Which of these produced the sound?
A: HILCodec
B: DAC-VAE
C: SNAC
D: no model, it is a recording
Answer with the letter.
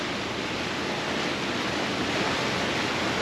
D